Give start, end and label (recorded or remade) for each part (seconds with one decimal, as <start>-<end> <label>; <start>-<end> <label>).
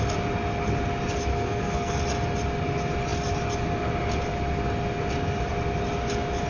0.0-1.3 recorded; 1.3-1.9 remade; 1.9-6.5 recorded